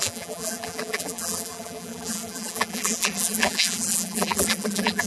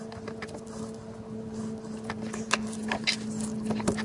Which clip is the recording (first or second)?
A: second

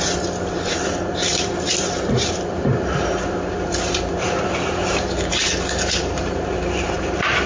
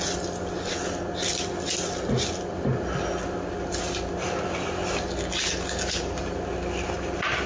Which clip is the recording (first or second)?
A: second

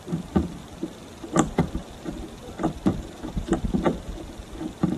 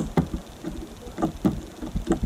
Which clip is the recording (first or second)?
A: second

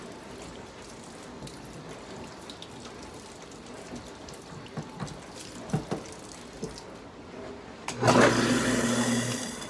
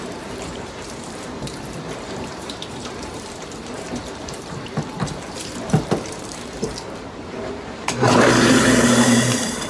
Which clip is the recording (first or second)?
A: first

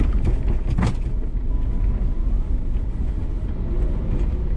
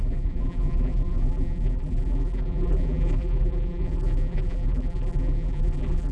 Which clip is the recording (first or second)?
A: first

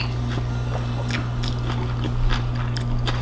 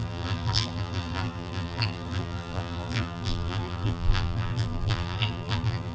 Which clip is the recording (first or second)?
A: first